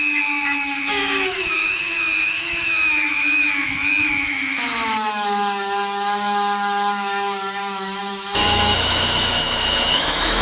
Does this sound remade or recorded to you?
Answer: remade